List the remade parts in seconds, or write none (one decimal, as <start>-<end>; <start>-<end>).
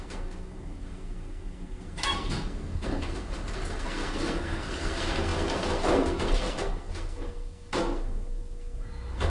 0.0-9.3